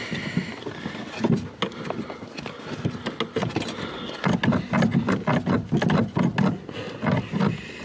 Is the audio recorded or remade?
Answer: recorded